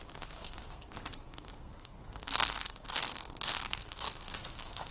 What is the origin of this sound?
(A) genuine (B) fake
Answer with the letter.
B